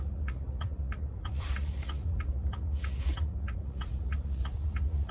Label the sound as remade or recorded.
remade